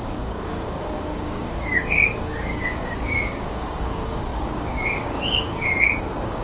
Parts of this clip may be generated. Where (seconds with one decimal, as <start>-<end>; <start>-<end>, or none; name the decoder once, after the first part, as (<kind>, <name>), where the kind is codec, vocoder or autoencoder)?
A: 0.0-6.4 (codec, DAC)